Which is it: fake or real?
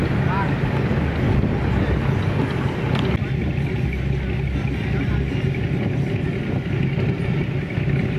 real